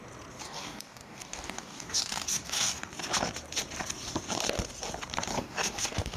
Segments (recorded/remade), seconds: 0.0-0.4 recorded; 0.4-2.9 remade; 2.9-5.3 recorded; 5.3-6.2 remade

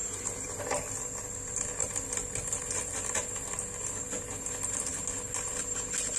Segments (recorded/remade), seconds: 0.0-0.6 remade; 0.6-6.2 recorded

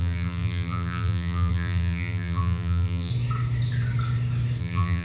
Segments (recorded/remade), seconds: 0.0-3.1 remade; 3.1-4.6 recorded; 4.6-5.0 remade

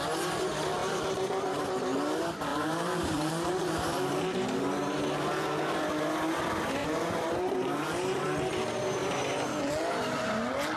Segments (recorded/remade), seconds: 0.0-0.8 recorded; 0.8-1.6 remade; 1.6-2.5 recorded; 2.5-4.2 remade; 4.2-6.8 recorded; 6.8-8.2 remade; 8.2-10.8 recorded

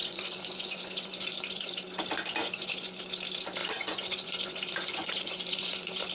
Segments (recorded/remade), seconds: 0.0-1.8 remade; 1.8-2.4 recorded; 2.4-3.0 remade; 3.0-3.6 recorded; 3.6-6.1 remade

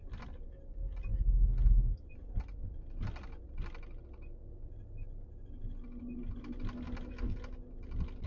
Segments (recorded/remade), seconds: 0.0-8.3 recorded